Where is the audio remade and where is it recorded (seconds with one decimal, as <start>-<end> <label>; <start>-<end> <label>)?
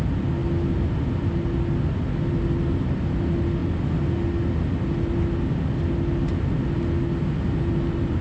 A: 0.0-8.2 recorded